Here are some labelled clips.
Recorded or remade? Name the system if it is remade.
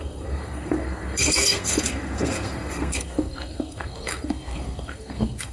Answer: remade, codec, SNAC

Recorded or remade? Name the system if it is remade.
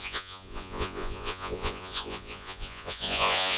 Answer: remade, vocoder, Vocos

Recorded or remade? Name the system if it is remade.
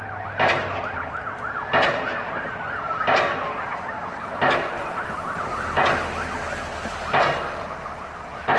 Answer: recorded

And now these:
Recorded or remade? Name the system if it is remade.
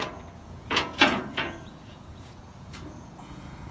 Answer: remade, vocoder, Vocos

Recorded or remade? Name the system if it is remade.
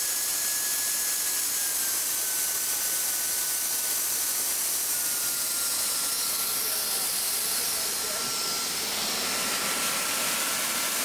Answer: recorded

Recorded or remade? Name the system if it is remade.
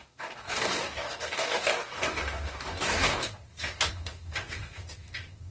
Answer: remade, codec, DAC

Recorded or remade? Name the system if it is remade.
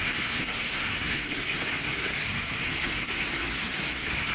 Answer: remade, codec, SNAC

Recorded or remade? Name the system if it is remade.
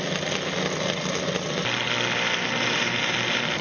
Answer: recorded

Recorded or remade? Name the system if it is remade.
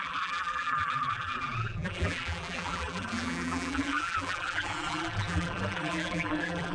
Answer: remade, vocoder, BigVGAN v2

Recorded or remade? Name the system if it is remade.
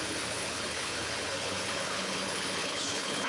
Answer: remade, codec, HILCodec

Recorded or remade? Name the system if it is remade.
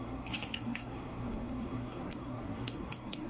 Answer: remade, codec, SNAC